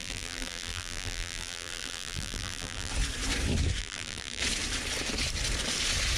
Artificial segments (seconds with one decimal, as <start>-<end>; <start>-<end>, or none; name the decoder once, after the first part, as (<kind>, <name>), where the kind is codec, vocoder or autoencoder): 0.0-2.9 (vocoder, BigVGAN v2); 3.8-4.4